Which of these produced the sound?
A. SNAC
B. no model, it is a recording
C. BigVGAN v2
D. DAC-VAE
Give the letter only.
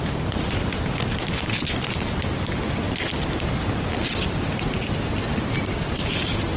B